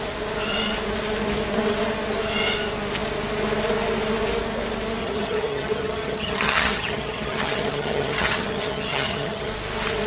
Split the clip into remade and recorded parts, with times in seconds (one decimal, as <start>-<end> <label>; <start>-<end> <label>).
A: 0.0-5.0 recorded; 5.0-9.5 remade; 9.5-10.1 recorded